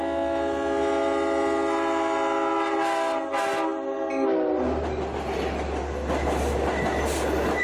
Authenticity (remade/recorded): recorded